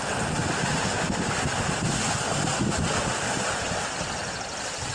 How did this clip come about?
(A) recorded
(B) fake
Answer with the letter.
A